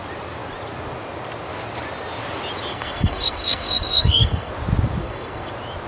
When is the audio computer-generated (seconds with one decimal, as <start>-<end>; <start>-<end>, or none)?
2.7-4.5; 5.0-5.5